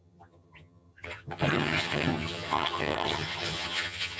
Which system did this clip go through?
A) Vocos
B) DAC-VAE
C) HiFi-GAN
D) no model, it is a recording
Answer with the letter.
C